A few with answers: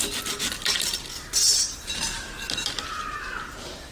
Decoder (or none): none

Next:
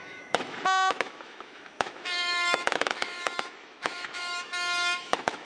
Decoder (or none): autoencoder, DAC-VAE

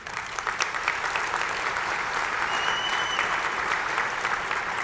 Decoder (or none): vocoder, BigVGAN v2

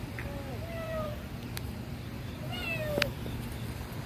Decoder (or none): vocoder, BigVGAN v2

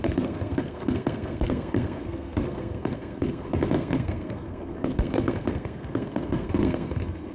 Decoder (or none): codec, SNAC